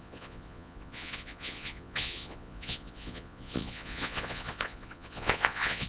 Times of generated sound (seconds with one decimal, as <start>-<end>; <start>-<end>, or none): 0.0-5.9

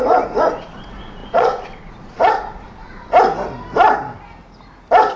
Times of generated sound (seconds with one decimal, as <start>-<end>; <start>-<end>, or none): 0.0-3.1

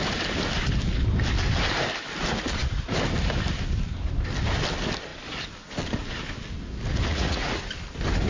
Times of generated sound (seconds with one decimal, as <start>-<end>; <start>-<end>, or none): 7.1-7.6

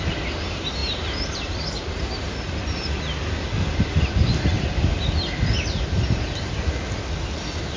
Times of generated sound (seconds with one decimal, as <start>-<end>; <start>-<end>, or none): none

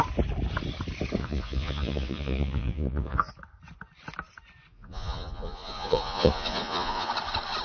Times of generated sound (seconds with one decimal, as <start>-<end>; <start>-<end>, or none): 1.2-3.3; 4.7-7.1

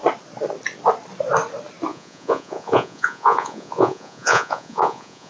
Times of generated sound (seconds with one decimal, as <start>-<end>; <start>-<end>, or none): 1.9-5.3

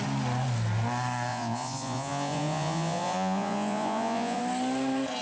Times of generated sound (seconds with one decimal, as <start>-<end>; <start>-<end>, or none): 1.3-4.4

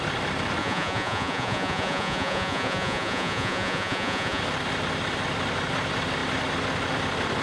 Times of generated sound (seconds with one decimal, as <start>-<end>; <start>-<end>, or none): 0.6-4.4